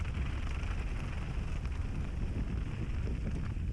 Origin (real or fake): real